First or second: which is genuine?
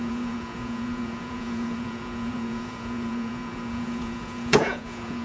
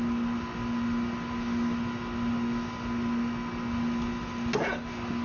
second